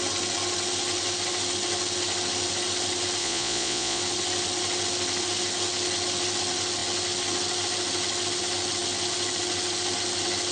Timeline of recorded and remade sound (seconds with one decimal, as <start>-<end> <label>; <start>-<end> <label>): 0.0-3.2 recorded; 3.2-4.0 remade; 4.0-10.5 recorded